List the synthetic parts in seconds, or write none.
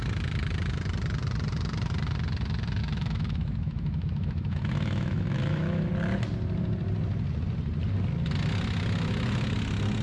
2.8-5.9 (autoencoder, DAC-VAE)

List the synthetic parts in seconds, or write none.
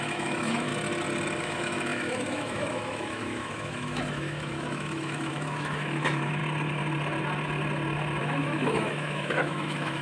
0.0-0.7 (autoencoder, DAC-VAE); 1.4-6.4; 8.2-10.0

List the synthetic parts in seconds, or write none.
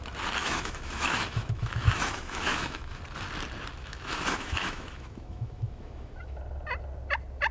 0.4-3.0 (autoencoder, DAC-VAE); 3.8-6.4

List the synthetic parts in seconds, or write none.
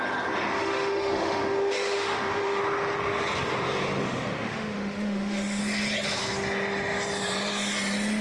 0.5-2.6 (autoencoder, DAC-VAE); 4.0-5.6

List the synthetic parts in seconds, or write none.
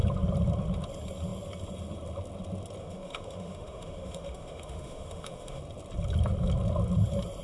2.8-5.6 (autoencoder, DAC-VAE)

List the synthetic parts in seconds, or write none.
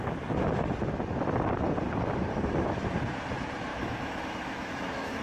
3.7-5.2 (autoencoder, DAC-VAE)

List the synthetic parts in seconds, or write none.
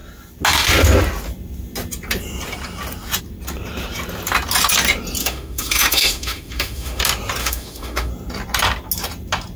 5.2-7.0 (autoencoder, DAC-VAE); 7.4-8.1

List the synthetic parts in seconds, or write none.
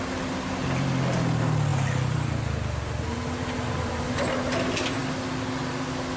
none